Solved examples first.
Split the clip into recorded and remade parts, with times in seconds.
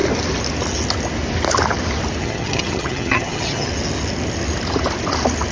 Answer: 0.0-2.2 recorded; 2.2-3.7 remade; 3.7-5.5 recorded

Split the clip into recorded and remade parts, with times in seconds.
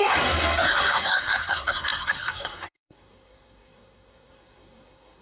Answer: 0.0-5.2 remade